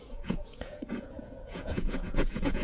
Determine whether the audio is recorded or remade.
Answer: remade